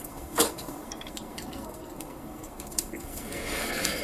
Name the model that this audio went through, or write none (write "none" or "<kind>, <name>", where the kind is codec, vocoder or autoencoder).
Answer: codec, SNAC